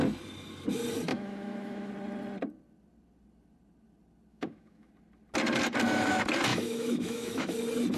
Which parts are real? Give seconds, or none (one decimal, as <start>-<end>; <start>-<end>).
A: 0.0-1.1; 1.9-4.3; 4.9-6.5; 7.5-8.0